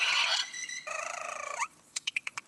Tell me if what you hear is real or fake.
fake